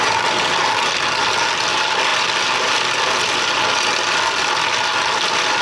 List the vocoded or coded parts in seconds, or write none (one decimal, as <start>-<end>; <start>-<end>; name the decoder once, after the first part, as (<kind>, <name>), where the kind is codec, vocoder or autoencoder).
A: none